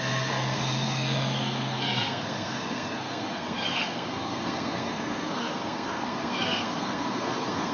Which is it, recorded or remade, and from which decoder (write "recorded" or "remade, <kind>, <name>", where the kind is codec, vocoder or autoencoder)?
remade, codec, SNAC